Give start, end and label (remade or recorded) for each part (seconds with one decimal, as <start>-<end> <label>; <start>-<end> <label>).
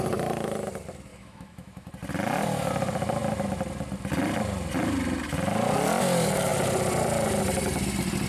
0.0-1.1 recorded; 1.1-1.9 remade; 1.9-8.3 recorded